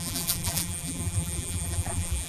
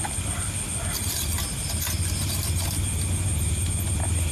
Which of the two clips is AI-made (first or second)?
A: first